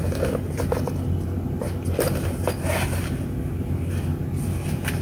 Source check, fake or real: real